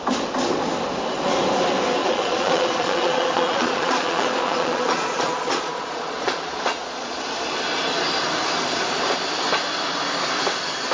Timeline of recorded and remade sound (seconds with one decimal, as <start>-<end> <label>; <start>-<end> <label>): 0.0-2.0 recorded; 2.0-7.2 remade; 7.2-10.9 recorded